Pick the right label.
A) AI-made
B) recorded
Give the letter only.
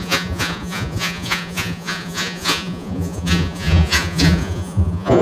A